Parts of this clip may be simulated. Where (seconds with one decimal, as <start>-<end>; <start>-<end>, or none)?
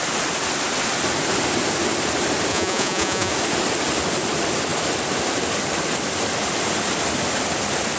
2.5-3.3